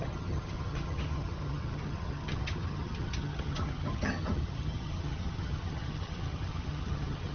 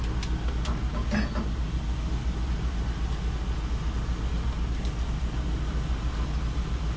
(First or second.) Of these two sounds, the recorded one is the second